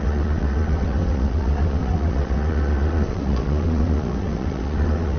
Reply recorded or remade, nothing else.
remade